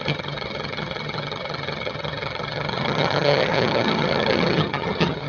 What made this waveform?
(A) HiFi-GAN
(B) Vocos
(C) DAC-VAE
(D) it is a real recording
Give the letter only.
A